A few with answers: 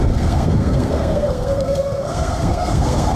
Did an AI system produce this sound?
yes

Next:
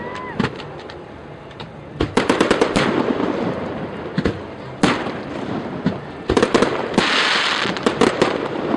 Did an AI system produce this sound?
no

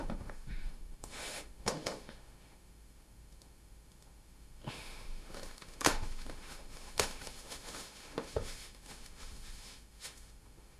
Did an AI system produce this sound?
yes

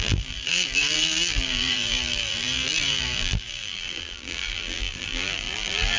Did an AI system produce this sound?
yes